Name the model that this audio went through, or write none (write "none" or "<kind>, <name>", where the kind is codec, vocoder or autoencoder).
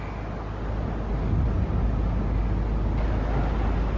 none